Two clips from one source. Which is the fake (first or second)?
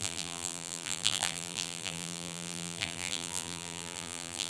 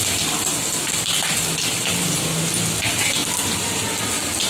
first